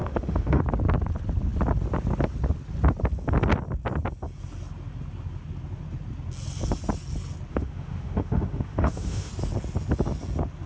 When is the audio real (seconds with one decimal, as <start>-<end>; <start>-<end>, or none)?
0.6-7.5; 9.3-10.7